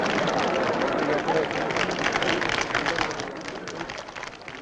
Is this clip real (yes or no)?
yes